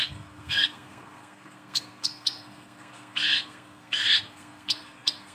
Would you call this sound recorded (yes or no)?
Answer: no